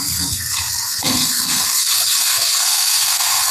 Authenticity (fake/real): fake